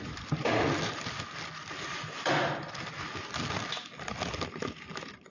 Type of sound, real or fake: real